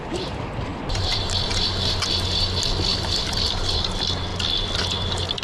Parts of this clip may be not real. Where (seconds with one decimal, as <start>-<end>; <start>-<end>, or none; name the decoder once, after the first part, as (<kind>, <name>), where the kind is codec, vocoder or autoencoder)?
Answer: 0.7-1.3 (vocoder, BigVGAN v2); 2.9-3.9